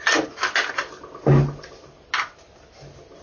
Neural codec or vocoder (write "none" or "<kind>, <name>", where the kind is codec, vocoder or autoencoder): none